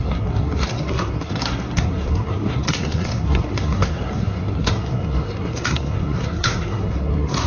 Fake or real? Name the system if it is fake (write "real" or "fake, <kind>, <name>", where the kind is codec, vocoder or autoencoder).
fake, codec, SNAC